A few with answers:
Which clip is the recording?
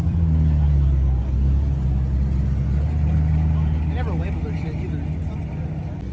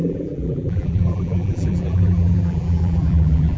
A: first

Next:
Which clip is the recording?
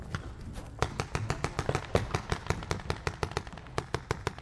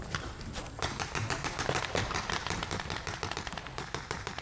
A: first